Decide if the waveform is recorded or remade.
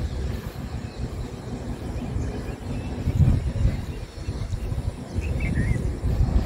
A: recorded